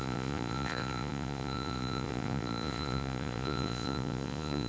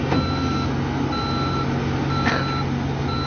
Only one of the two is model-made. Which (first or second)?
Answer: first